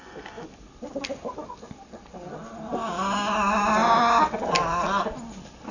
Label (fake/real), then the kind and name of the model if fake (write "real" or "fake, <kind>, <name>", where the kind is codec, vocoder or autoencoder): real